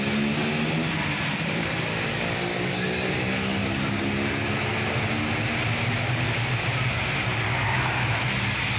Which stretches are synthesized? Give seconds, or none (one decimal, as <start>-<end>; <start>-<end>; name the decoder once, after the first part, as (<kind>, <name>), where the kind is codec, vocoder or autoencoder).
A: 2.1-3.1 (codec, DAC)